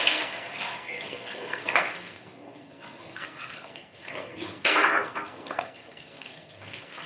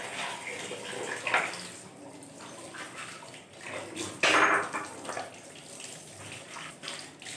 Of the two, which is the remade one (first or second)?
first